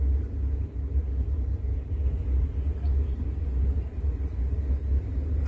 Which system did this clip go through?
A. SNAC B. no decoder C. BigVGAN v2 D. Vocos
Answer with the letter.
B